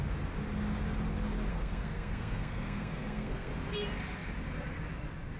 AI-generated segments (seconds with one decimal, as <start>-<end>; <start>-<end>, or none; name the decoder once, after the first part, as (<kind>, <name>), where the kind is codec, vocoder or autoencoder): 1.5-3.5 (codec, SNAC)